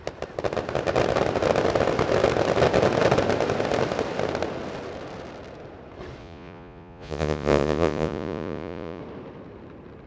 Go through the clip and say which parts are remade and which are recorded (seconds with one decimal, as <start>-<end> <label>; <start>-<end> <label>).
0.0-6.2 recorded; 6.2-9.0 remade; 9.0-10.1 recorded